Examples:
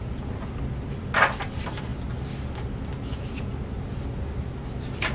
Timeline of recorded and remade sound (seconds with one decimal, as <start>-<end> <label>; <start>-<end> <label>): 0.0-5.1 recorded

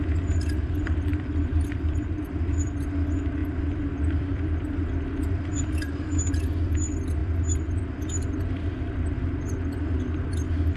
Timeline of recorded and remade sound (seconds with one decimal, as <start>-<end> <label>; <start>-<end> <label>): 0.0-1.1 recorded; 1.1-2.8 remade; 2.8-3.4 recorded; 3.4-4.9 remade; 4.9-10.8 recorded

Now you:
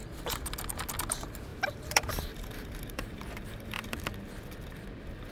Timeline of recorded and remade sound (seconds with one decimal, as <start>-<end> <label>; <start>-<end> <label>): 0.0-1.5 recorded; 1.5-4.0 remade; 4.0-5.3 recorded

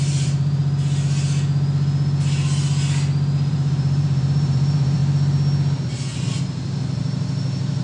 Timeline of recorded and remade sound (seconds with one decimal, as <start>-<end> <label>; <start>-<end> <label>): 0.0-0.6 remade; 0.6-3.5 recorded; 3.5-5.0 remade; 5.0-6.4 recorded; 6.4-7.8 remade